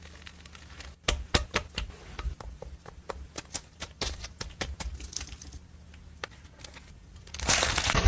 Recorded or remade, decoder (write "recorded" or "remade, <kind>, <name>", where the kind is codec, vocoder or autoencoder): recorded